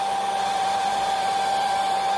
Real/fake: fake